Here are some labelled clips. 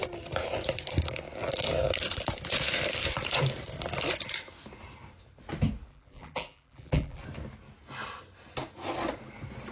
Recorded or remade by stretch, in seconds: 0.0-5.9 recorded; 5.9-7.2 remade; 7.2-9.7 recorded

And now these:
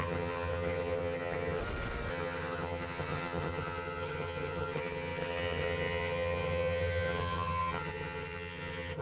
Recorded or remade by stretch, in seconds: 0.0-1.6 remade; 1.6-2.1 recorded; 2.1-9.0 remade